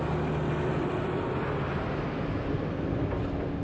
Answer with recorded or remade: recorded